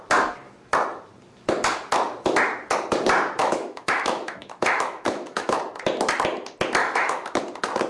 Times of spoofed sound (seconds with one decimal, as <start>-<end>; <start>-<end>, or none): 3.4-5.6; 6.8-7.4